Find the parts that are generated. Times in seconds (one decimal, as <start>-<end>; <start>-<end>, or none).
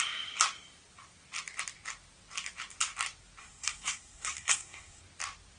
3.4-5.0